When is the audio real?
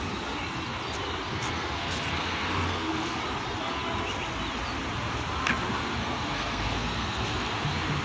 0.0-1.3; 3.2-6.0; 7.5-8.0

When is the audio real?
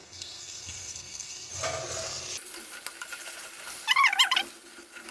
1.5-5.1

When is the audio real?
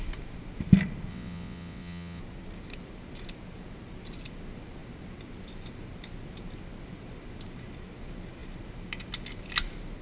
0.0-1.1; 2.2-10.0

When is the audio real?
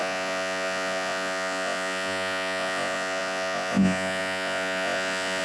none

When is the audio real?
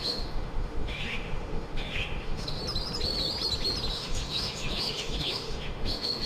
2.6-3.9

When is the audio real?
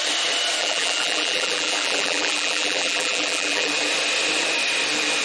0.0-0.6; 3.7-5.2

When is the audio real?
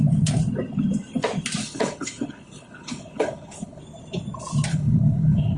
0.0-1.6; 3.8-4.7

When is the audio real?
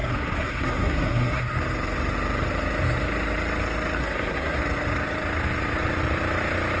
1.4-4.0; 4.6-6.8